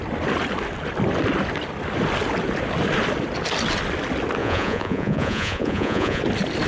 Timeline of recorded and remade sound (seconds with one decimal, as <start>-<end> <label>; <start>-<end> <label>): 0.0-4.4 recorded; 4.4-6.2 remade; 6.2-6.7 recorded